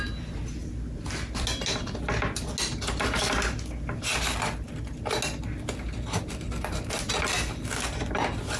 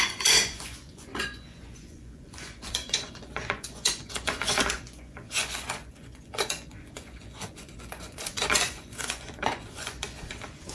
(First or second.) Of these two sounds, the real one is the first